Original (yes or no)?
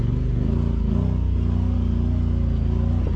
yes